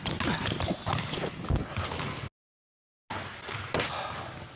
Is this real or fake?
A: real